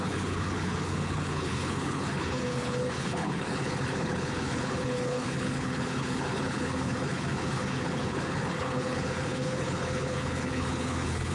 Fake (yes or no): yes